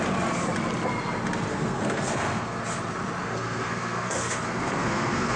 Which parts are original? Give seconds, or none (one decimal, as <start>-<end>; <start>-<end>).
0.0-1.5; 2.6-3.2